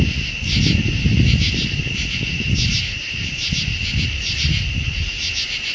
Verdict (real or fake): real